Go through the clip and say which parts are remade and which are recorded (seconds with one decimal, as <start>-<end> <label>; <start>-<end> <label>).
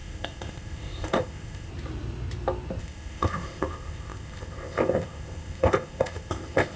0.0-1.7 remade; 1.7-2.8 recorded; 2.8-6.8 remade